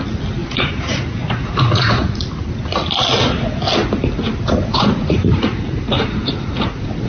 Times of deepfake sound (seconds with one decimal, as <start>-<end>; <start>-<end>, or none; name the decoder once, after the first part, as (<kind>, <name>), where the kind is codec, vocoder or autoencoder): 0.4-2.3 (vocoder, Vocos); 4.7-7.1